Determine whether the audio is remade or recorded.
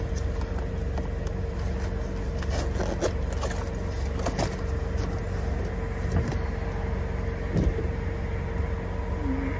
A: recorded